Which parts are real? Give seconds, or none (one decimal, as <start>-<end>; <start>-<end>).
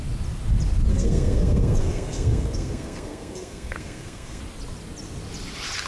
0.0-0.9; 4.4-5.9